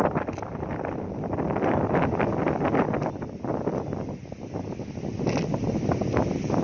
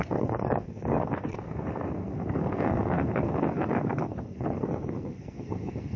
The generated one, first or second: second